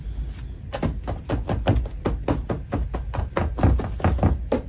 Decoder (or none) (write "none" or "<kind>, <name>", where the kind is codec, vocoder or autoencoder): none